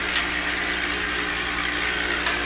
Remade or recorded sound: remade